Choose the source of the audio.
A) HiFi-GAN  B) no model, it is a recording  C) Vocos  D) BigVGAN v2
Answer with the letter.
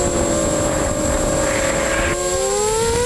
B